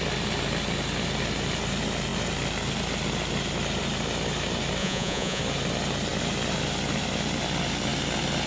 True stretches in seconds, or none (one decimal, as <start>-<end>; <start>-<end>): 0.0-4.8; 5.4-8.5